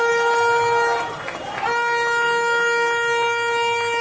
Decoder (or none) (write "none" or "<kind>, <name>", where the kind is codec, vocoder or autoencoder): none